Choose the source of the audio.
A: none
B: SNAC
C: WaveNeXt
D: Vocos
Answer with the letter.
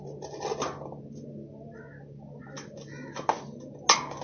A